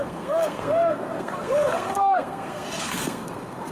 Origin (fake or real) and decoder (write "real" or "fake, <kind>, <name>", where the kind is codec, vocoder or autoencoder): fake, codec, SNAC